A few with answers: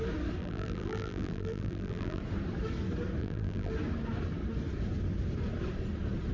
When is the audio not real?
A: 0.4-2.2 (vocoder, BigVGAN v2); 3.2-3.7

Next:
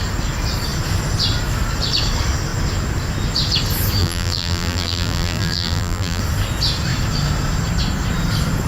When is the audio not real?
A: 4.0-6.2 (vocoder, BigVGAN v2)

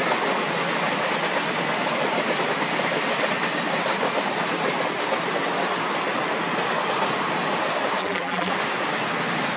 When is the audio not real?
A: 8.0-8.5 (vocoder, BigVGAN v2)

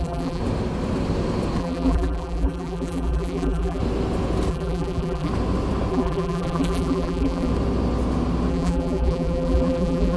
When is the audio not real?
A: 0.0-0.4 (vocoder, BigVGAN v2); 1.6-3.8; 4.5-5.3; 5.9-7.5; 8.5-10.2

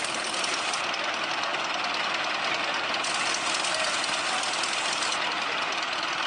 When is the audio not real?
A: 0.0-1.5 (vocoder, BigVGAN v2); 4.3-6.3

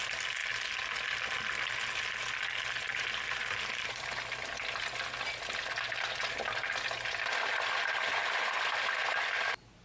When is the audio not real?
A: none